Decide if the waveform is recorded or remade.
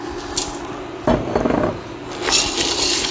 recorded